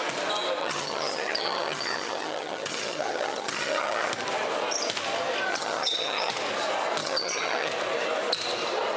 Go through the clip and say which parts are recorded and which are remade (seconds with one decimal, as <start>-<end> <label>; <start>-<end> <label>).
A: 0.0-0.6 recorded; 0.6-4.1 remade; 4.1-5.5 recorded; 5.5-6.3 remade; 6.3-7.0 recorded; 7.0-7.7 remade; 7.7-9.0 recorded